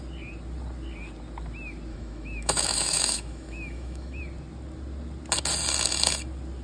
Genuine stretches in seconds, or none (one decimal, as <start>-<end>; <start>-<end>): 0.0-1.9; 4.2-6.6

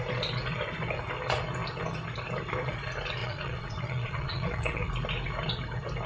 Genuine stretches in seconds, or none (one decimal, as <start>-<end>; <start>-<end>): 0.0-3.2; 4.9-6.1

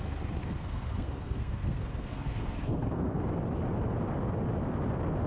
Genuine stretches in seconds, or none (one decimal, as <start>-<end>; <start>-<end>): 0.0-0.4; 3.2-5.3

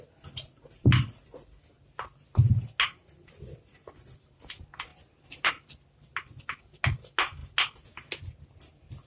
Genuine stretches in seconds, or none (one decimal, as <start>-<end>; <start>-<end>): 0.0-9.1

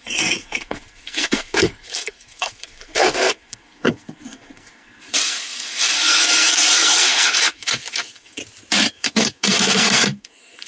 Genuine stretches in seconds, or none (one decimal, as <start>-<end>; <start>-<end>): 8.4-8.9

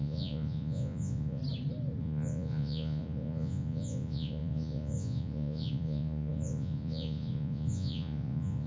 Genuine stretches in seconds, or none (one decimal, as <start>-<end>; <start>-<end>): 1.4-2.0